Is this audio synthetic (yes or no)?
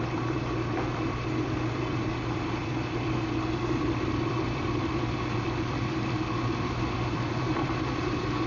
yes